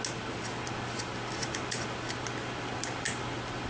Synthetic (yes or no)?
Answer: no